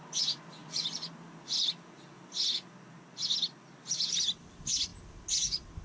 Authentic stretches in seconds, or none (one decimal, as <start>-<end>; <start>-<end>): 0.0-5.8